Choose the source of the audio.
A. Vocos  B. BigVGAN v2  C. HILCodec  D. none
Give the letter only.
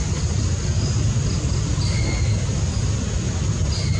D